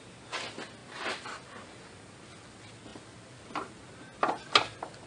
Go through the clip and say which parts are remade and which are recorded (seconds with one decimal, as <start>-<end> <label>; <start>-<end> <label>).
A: 0.0-5.1 recorded

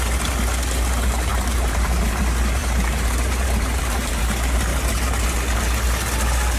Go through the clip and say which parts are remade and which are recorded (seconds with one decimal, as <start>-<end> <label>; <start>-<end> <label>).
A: 0.0-1.3 recorded; 1.3-2.2 remade; 2.2-2.6 recorded; 2.6-4.2 remade; 4.2-6.6 recorded

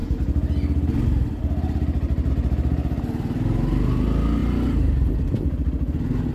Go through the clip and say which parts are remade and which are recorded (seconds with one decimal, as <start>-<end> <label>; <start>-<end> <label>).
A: 0.0-6.3 recorded

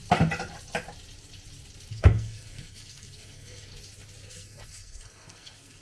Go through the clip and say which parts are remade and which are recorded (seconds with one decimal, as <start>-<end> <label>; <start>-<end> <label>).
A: 0.0-1.9 recorded; 1.9-3.7 remade; 3.7-4.3 recorded; 4.3-5.8 remade

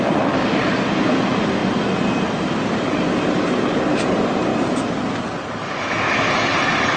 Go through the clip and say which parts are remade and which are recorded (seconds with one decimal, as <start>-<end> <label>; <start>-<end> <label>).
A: 0.0-7.0 recorded